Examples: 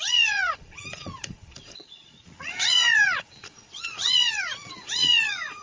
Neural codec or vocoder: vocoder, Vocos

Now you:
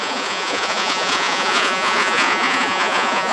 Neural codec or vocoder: vocoder, Vocos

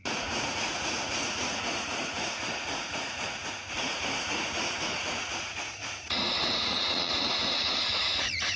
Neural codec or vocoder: vocoder, Vocos